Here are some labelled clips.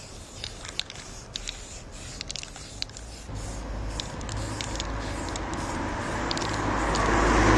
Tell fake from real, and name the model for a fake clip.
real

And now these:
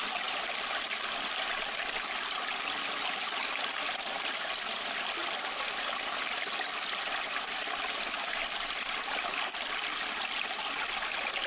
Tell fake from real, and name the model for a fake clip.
real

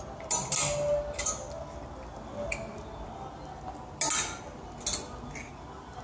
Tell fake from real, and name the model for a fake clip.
real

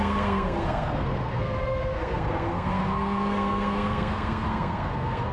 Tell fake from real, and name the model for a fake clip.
fake, codec, SNAC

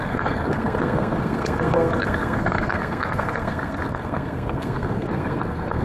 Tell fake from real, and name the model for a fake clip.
fake, codec, SNAC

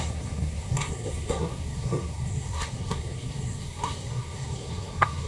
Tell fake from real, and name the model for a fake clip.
fake, codec, SNAC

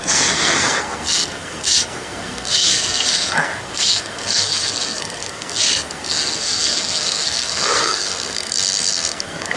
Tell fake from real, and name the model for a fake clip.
fake, codec, SNAC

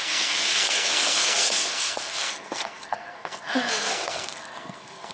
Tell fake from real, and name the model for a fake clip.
fake, codec, SNAC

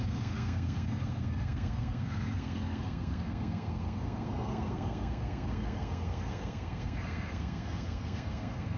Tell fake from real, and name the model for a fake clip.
fake, codec, SNAC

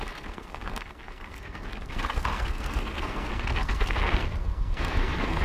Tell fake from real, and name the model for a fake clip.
fake, codec, SNAC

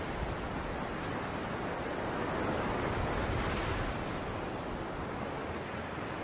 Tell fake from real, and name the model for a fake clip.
real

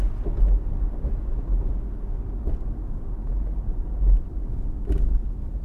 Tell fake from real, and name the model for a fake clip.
real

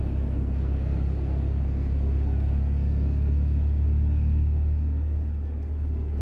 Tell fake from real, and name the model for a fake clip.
fake, codec, SNAC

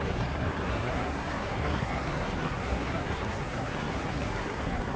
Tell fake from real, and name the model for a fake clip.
fake, codec, SNAC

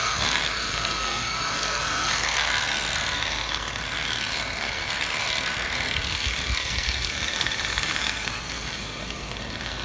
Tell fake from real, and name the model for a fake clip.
fake, codec, SNAC